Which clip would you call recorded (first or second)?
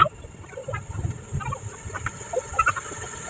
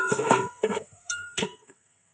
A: first